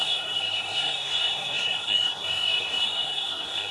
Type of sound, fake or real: fake